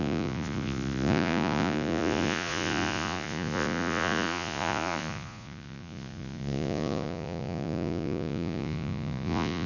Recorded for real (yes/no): no